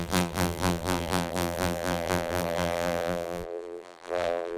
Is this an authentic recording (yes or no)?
no